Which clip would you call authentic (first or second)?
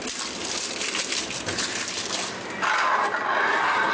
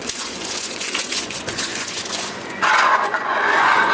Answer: first